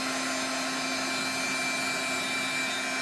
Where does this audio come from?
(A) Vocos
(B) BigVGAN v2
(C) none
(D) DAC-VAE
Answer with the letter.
C